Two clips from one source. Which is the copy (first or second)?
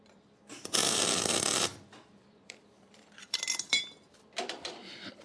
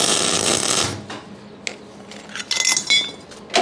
first